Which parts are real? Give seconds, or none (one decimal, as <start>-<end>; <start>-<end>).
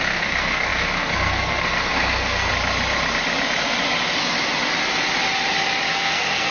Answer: 2.5-5.9